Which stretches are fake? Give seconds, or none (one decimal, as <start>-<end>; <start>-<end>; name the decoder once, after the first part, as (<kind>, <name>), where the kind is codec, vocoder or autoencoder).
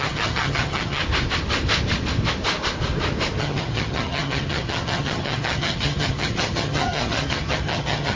0.0-1.0 (vocoder, HiFi-GAN); 3.4-8.2